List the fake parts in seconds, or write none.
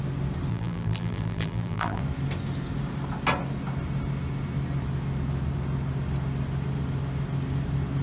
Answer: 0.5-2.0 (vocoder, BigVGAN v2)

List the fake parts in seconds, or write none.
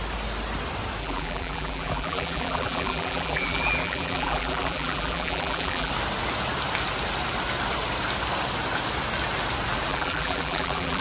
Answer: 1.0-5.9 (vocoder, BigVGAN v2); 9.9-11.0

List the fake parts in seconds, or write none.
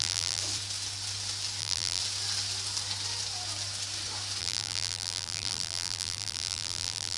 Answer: 0.0-0.4 (vocoder, BigVGAN v2); 1.6-2.0; 4.4-7.2